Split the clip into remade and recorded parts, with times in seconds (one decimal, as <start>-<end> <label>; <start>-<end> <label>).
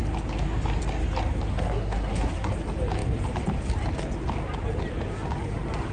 0.0-1.5 recorded; 1.5-2.5 remade; 2.5-5.9 recorded